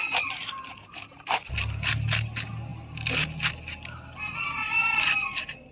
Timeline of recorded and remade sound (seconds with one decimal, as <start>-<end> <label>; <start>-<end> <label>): 0.0-5.7 recorded